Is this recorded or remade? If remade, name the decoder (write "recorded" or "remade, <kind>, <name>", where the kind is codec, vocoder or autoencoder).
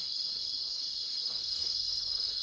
remade, codec, DAC